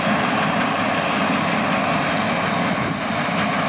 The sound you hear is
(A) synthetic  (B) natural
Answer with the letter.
B